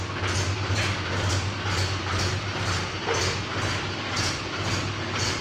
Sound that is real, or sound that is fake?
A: real